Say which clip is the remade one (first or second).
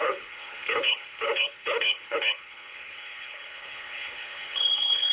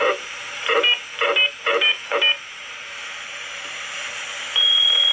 first